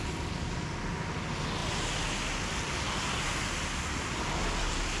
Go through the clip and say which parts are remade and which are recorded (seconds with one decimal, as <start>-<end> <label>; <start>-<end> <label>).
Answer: 0.0-5.0 recorded